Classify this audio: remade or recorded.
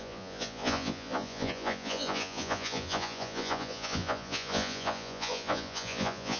remade